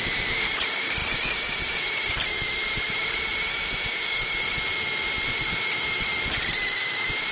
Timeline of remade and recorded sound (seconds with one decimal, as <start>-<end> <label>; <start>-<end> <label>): 0.0-3.9 recorded; 3.9-4.5 remade; 4.5-7.3 recorded